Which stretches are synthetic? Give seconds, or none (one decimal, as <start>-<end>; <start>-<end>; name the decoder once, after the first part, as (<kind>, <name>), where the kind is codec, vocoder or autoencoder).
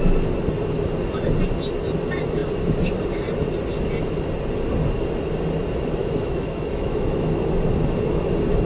6.0-7.4 (autoencoder, DAC-VAE)